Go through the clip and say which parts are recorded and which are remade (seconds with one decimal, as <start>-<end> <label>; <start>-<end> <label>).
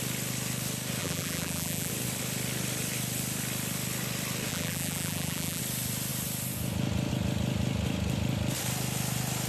0.0-1.0 recorded; 1.0-1.9 remade; 1.9-4.5 recorded; 4.5-5.6 remade; 5.6-9.5 recorded